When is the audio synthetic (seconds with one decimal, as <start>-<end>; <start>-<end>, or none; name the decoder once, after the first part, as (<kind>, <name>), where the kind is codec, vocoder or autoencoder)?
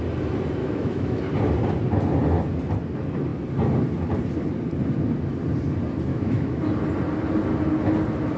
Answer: 0.6-1.2 (autoencoder, DAC-VAE); 6.1-6.7